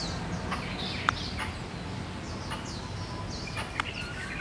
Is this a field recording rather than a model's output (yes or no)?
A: yes